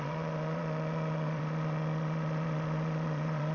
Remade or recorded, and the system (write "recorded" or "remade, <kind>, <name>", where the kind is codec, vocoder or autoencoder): remade, vocoder, Vocos